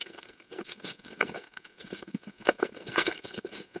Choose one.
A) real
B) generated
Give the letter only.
B